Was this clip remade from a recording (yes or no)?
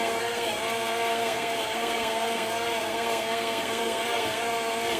yes